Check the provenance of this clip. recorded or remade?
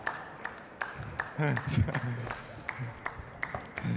recorded